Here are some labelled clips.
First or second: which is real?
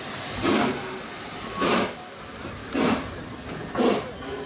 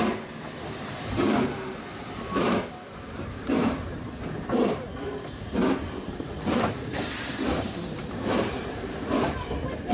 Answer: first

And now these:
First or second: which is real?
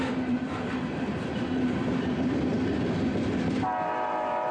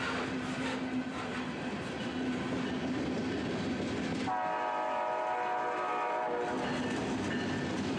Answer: second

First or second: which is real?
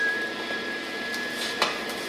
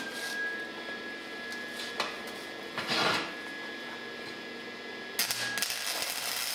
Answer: second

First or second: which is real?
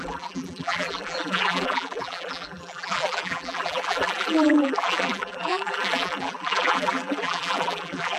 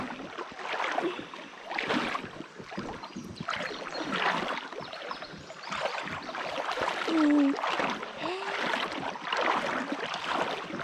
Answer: second